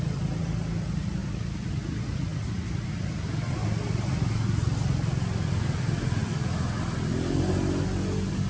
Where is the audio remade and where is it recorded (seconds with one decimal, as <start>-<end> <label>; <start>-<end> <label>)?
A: 0.0-1.2 recorded; 1.2-1.7 remade; 1.7-3.6 recorded; 3.6-5.5 remade; 5.5-6.2 recorded; 6.2-6.8 remade; 6.8-8.5 recorded